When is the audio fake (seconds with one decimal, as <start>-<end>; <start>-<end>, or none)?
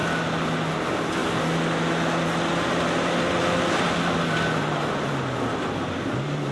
none